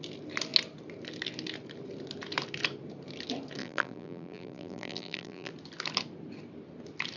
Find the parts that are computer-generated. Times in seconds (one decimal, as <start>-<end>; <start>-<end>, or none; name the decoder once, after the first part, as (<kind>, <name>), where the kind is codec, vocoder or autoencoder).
3.6-5.5 (vocoder, BigVGAN v2)